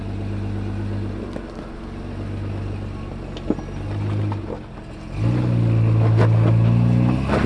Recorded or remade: recorded